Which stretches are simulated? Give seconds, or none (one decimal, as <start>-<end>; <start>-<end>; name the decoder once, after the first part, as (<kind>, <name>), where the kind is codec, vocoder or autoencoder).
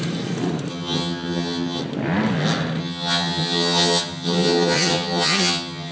0.7-1.8 (vocoder, HiFi-GAN); 2.8-5.9